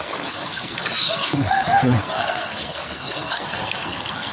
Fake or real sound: fake